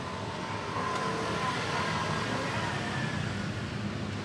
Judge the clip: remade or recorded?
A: recorded